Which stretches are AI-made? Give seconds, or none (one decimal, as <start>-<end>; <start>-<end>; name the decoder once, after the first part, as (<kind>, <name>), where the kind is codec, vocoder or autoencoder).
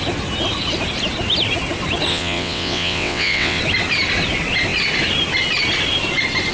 2.1-3.6 (vocoder, WaveNeXt)